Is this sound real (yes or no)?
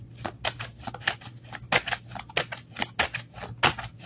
yes